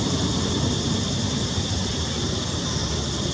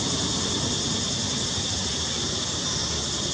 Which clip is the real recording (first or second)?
second